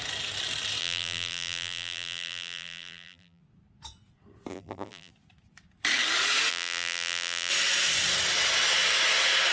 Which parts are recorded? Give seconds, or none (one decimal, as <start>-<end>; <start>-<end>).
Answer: 0.0-0.8; 3.4-4.5; 5.1-6.5; 7.5-9.5